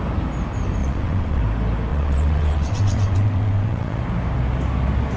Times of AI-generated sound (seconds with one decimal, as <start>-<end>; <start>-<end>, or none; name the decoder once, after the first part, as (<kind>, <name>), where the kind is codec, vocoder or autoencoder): 0.8-1.4 (vocoder, WaveNeXt); 1.9-4.0